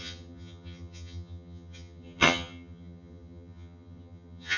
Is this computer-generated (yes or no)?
yes